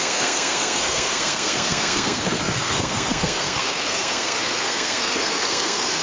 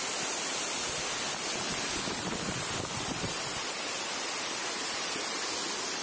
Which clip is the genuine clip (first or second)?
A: second